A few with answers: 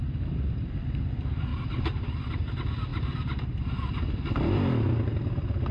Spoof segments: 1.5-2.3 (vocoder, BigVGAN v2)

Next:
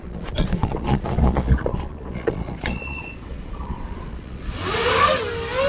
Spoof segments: 0.0-4.8 (vocoder, Vocos)

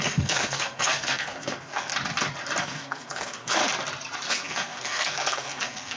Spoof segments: 0.0-1.9 (codec, SNAC); 2.6-3.6; 4.3-6.0